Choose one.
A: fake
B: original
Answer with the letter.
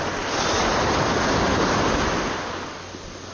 B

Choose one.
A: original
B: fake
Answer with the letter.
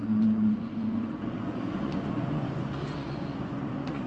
B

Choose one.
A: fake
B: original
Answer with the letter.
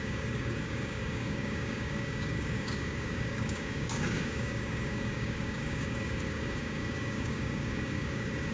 A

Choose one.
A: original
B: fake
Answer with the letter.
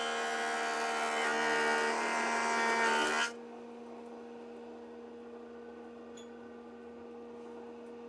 A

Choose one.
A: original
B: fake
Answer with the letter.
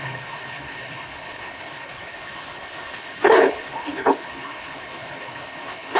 B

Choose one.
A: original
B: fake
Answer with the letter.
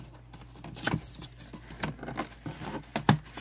A